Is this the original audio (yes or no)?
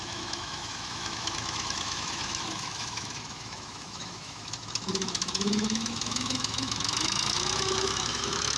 no